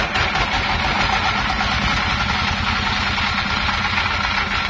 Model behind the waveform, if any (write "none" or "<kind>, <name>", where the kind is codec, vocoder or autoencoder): none